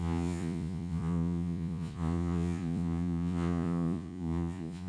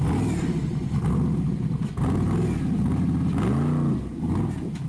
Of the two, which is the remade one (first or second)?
first